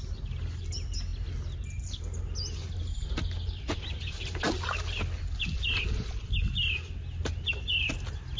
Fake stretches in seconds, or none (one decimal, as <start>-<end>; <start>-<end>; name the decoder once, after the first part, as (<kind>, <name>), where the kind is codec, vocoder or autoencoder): none